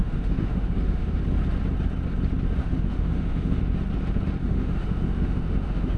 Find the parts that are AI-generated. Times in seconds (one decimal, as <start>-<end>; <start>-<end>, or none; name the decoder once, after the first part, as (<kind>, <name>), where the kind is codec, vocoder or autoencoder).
0.0-1.2 (autoencoder, DAC-VAE); 2.6-3.6; 4.4-6.0